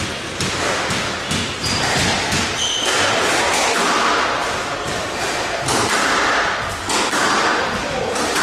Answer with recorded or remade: recorded